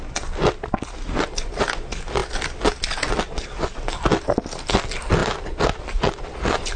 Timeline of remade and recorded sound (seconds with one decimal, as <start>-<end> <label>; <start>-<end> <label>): 0.0-2.2 recorded; 2.2-2.9 remade; 2.9-5.2 recorded; 5.2-5.8 remade; 5.8-6.8 recorded